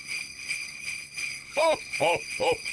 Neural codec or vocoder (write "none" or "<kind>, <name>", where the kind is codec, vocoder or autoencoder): codec, HILCodec